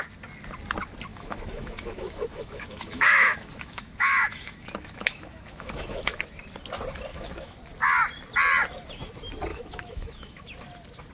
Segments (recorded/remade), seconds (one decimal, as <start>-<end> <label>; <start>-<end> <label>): 0.0-1.1 recorded; 1.1-6.2 remade; 6.2-7.1 recorded; 7.1-7.6 remade; 7.6-9.5 recorded; 9.5-10.5 remade; 10.5-11.1 recorded